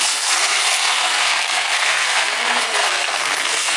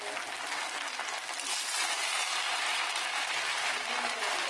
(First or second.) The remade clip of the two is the first